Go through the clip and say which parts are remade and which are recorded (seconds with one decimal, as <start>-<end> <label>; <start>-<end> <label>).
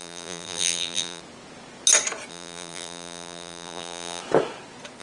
0.0-1.2 remade; 1.2-2.3 recorded; 2.3-4.2 remade; 4.2-5.0 recorded